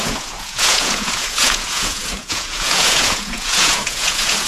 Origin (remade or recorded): remade